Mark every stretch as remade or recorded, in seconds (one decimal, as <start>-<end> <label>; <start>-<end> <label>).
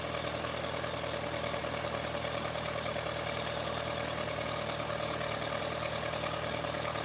0.0-7.0 recorded